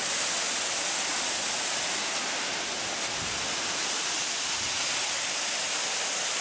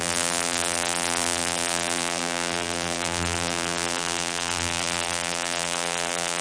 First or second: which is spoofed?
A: second